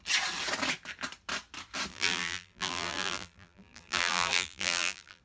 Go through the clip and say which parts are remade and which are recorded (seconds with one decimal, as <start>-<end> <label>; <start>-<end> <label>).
0.0-1.9 recorded; 1.9-5.2 remade